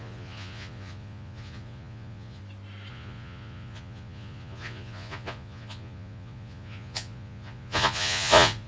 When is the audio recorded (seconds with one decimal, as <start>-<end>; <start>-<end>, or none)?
2.4-2.9